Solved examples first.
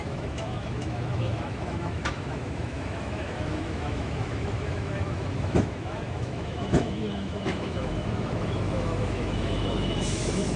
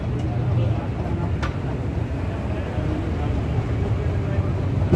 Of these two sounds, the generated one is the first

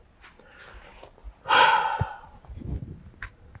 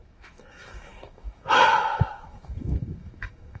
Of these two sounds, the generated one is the second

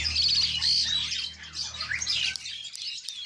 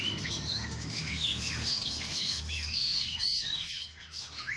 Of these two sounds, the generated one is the second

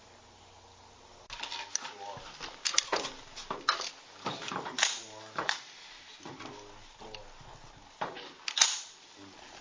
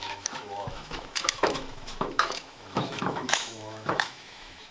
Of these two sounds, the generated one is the second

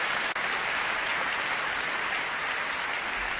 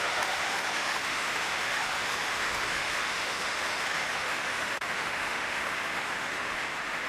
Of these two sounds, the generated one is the second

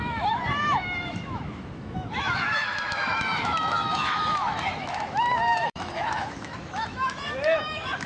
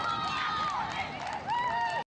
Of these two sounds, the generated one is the first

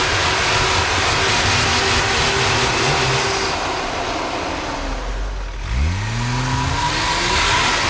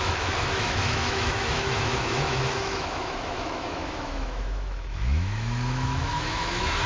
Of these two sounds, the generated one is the second